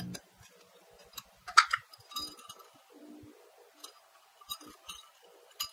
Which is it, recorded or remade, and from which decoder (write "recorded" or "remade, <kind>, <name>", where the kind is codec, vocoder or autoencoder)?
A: recorded